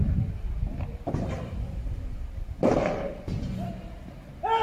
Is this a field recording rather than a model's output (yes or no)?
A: yes